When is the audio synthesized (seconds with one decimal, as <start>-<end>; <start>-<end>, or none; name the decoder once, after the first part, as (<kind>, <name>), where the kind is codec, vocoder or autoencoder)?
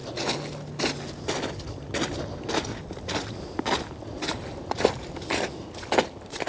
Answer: none